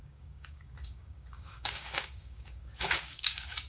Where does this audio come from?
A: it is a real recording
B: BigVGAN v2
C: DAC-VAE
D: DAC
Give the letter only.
D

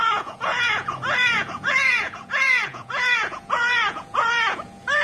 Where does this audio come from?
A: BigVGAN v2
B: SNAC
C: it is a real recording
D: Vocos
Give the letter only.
D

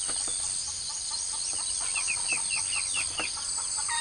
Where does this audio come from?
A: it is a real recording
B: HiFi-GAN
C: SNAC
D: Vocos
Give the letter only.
A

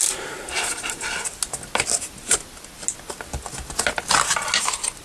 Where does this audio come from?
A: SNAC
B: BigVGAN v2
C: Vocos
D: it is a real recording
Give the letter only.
D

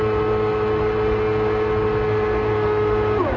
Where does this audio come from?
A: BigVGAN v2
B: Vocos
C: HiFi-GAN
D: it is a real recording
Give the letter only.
D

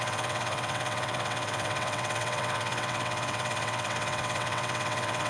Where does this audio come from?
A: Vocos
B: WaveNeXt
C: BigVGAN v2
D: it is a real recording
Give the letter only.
B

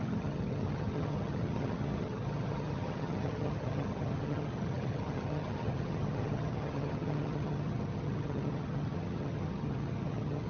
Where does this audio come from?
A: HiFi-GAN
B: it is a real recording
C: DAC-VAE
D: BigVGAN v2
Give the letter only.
A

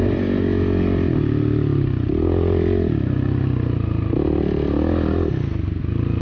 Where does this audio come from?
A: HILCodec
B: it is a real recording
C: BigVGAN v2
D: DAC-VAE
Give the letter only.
B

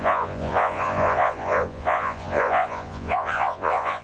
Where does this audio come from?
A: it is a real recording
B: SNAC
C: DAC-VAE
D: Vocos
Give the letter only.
D